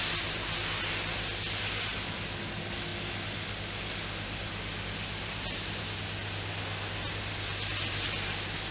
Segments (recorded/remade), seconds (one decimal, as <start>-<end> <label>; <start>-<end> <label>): 0.0-8.7 recorded